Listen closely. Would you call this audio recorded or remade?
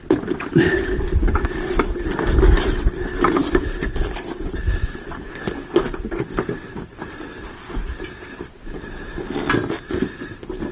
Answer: recorded